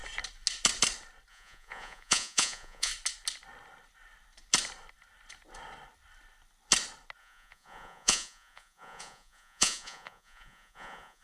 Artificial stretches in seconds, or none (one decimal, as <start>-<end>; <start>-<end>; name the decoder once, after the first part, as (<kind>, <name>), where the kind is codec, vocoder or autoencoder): 1.3-2.9 (vocoder, Vocos); 7.2-11.2